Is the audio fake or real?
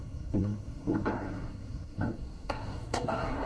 fake